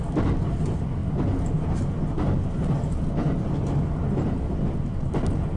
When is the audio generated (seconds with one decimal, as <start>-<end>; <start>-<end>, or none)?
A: none